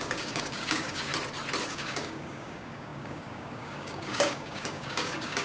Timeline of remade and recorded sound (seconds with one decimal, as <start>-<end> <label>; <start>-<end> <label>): 0.0-1.1 remade; 1.1-1.7 recorded; 1.7-5.4 remade